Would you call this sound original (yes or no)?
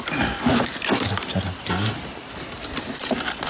yes